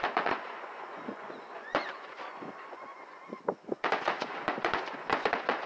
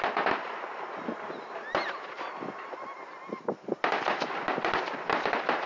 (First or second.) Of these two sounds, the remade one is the first